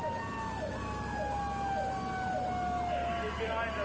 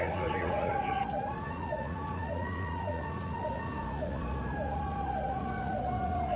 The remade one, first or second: second